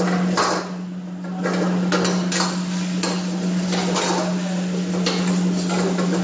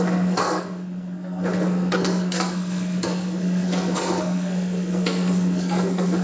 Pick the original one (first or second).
first